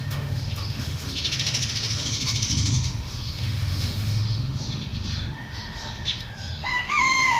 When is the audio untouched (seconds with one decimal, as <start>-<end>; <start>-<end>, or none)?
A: none